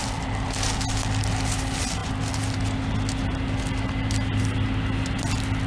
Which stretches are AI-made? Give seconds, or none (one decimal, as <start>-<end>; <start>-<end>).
none